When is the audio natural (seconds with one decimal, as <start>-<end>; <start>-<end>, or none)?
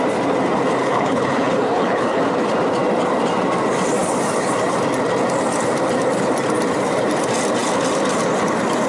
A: 0.0-0.8; 2.2-8.9